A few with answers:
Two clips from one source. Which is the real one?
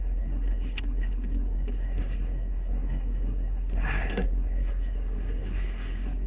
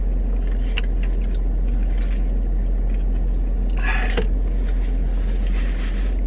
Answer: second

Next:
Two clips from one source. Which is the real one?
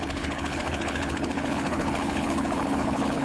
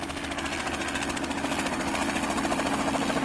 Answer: second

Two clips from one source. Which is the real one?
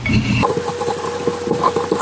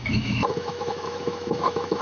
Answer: first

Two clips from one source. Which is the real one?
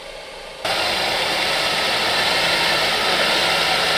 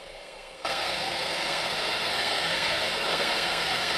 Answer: first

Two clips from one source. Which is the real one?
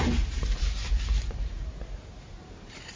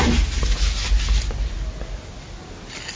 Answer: second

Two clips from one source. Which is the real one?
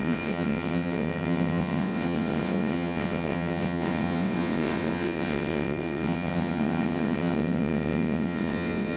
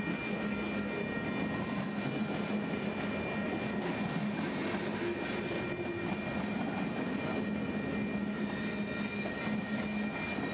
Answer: second